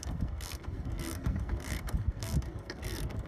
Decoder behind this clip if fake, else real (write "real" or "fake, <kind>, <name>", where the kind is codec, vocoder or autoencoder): fake, codec, SNAC